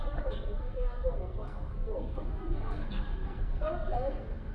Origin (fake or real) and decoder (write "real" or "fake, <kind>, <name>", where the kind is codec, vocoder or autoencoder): fake, codec, SNAC